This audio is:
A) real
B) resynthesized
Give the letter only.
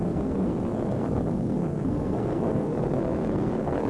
B